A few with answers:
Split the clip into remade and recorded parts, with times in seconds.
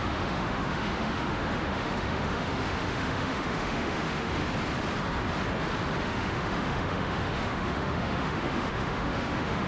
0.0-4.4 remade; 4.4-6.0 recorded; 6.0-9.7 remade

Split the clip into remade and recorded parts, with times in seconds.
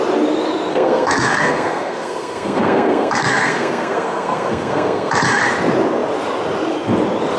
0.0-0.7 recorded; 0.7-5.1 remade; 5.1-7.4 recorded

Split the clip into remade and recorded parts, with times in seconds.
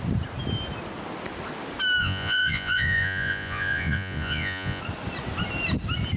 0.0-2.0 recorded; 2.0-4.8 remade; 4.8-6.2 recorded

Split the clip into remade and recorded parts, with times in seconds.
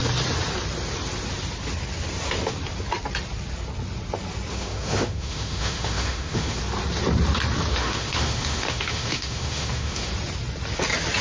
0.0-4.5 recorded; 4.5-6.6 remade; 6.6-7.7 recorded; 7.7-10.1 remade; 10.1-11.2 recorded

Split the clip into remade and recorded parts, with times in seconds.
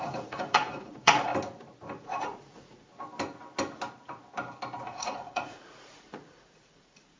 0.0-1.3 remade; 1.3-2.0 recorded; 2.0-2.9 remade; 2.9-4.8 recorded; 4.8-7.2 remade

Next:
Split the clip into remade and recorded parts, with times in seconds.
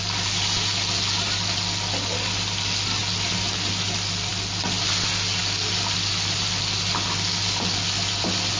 0.0-8.6 recorded